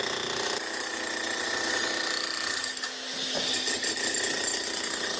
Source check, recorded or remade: recorded